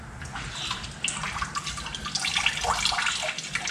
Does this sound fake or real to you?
real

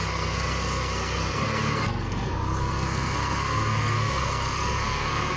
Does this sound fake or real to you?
fake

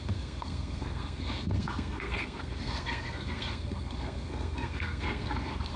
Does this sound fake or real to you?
fake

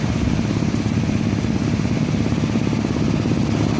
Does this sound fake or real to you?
real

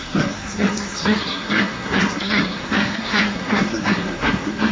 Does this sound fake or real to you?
fake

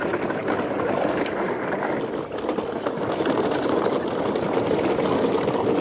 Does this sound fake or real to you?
real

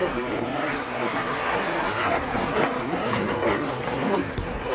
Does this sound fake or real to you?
fake